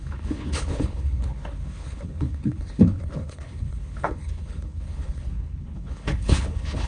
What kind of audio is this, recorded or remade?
remade